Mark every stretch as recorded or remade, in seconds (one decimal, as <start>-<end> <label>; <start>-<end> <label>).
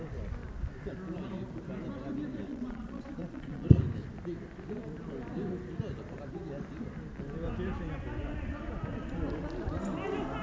0.0-2.5 recorded; 2.5-3.8 remade; 3.8-10.4 recorded